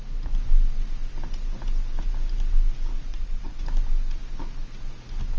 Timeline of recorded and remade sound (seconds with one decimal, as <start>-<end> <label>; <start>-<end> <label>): 0.0-3.1 recorded; 3.1-3.6 remade; 3.6-5.4 recorded

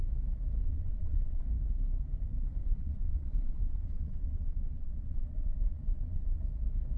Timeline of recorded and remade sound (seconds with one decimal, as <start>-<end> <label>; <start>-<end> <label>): 0.0-0.6 recorded; 0.6-1.4 remade; 1.4-2.6 recorded; 2.6-6.4 remade; 6.4-7.0 recorded

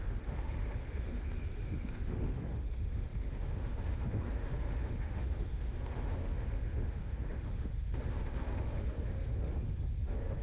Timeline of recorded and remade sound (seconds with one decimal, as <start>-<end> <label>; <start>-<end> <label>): 0.0-10.4 remade

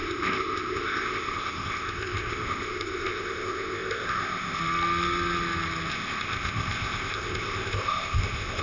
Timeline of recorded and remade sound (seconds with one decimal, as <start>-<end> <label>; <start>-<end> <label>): 0.0-4.6 remade; 4.6-5.9 recorded; 5.9-8.6 remade

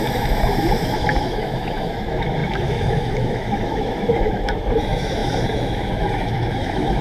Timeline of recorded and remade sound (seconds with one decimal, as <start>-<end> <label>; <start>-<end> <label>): 0.0-7.0 remade

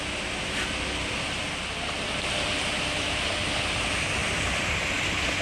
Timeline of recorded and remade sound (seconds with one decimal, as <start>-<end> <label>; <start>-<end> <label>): 0.0-5.4 recorded